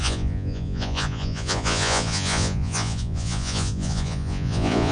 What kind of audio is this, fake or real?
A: fake